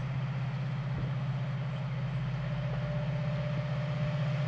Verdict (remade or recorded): recorded